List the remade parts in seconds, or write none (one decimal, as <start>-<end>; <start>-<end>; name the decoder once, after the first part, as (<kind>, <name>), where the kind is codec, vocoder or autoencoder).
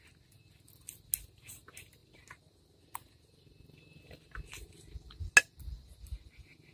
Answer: none